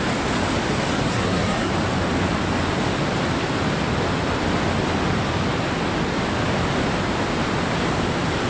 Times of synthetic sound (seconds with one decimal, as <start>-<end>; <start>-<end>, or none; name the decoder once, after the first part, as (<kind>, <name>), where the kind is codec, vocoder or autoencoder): 0.9-1.7 (codec, SNAC)